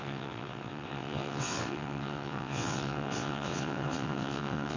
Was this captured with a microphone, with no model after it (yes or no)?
no